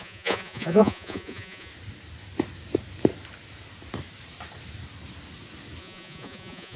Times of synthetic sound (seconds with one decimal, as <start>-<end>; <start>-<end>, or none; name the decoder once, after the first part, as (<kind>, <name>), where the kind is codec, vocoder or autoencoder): 0.0-1.7 (vocoder, Vocos); 5.8-6.8